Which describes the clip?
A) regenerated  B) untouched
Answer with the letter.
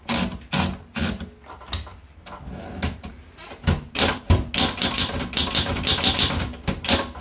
B